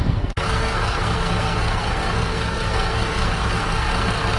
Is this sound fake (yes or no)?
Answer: yes